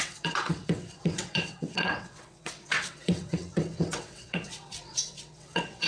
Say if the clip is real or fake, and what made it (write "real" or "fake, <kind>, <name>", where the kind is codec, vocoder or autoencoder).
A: fake, vocoder, WaveNeXt